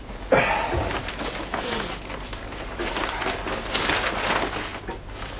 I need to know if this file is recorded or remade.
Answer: recorded